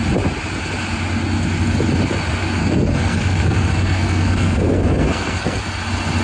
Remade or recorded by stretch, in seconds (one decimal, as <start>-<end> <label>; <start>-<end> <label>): 0.0-2.6 recorded; 2.6-5.6 remade; 5.6-6.2 recorded